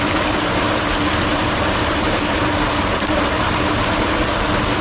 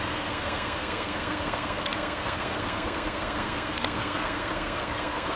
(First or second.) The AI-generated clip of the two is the second